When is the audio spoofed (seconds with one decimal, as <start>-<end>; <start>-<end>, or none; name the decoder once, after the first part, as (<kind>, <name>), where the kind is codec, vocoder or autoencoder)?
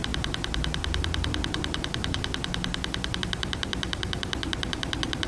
3.2-5.3 (vocoder, BigVGAN v2)